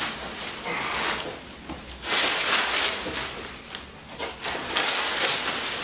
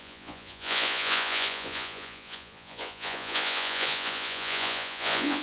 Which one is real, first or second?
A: first